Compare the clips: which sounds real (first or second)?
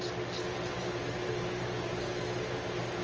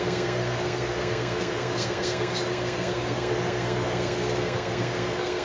first